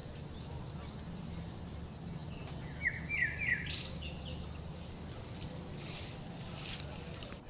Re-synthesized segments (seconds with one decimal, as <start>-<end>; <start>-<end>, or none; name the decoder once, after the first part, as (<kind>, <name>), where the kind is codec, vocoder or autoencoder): none